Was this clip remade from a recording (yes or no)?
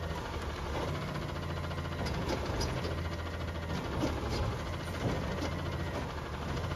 no